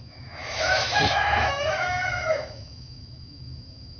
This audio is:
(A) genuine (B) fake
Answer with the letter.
B